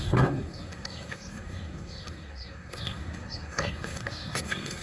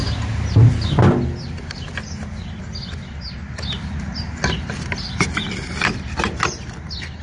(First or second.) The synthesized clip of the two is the first